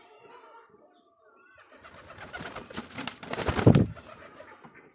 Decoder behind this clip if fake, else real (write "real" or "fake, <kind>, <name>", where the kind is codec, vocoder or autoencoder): real